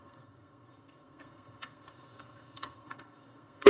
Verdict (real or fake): fake